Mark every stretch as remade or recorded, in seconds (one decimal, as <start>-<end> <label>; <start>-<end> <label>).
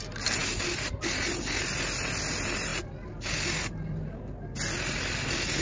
0.0-5.6 recorded